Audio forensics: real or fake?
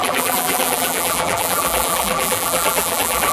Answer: fake